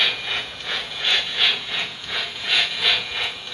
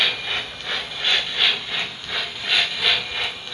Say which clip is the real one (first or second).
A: second